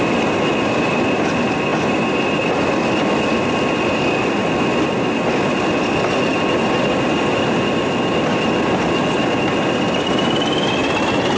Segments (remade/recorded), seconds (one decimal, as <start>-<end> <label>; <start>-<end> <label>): 0.0-11.4 recorded